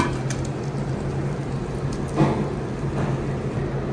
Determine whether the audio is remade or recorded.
recorded